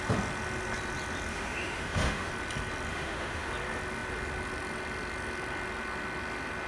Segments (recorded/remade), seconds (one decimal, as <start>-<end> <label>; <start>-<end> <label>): 0.0-1.3 recorded; 1.3-2.3 remade; 2.3-2.9 recorded; 2.9-3.5 remade; 3.5-6.7 recorded